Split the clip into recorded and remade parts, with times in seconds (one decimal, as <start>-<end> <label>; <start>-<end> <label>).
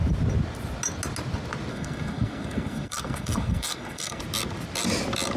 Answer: 0.0-1.7 recorded; 1.7-4.2 remade; 4.2-5.4 recorded